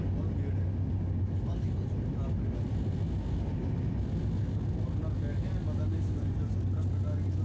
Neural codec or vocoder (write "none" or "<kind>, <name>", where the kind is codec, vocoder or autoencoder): none